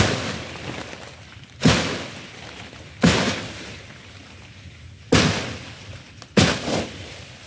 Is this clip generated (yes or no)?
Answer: no